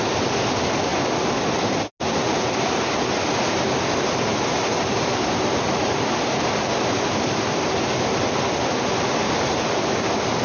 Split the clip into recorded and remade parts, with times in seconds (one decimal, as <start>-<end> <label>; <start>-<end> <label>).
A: 0.0-10.4 recorded